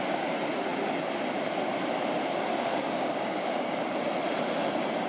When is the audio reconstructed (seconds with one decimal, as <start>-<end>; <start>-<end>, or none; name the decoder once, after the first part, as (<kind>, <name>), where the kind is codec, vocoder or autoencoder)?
2.7-3.8 (codec, DAC)